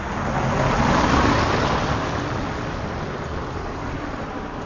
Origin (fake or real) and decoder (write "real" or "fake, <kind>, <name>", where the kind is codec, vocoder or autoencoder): real